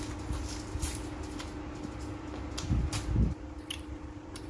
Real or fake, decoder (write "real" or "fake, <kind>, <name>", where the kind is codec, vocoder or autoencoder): real